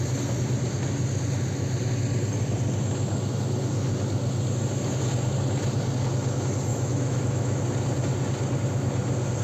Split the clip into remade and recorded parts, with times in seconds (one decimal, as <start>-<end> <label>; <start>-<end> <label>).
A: 0.0-6.7 recorded; 6.7-7.6 remade; 7.6-9.4 recorded